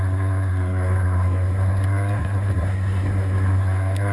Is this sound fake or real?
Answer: fake